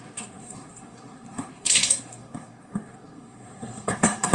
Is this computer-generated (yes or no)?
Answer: yes